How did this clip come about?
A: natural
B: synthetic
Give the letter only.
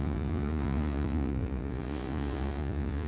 B